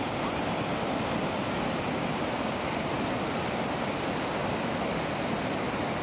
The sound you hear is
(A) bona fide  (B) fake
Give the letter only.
A